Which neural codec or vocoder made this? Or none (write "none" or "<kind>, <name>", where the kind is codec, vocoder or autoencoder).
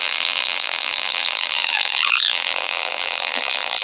vocoder, BigVGAN v2